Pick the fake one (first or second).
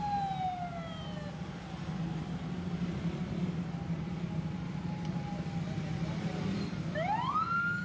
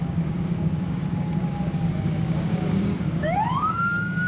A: second